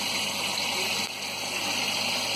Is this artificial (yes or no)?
yes